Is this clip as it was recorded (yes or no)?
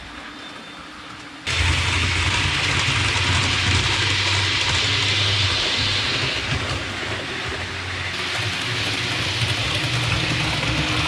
yes